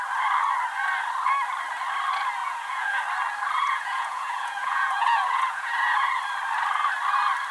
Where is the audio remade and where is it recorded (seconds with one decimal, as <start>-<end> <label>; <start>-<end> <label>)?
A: 0.0-2.4 recorded; 2.4-3.0 remade; 3.0-3.6 recorded; 3.6-6.2 remade; 6.2-7.5 recorded